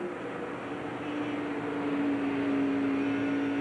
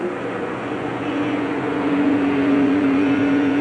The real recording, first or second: first